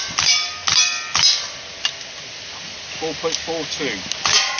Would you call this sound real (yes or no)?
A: yes